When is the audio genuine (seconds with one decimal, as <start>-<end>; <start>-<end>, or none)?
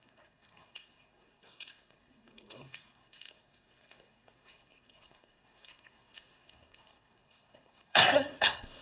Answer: none